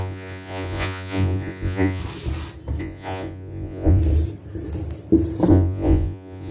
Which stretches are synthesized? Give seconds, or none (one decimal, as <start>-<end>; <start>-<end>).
0.0-2.0; 2.8-4.0; 5.5-6.5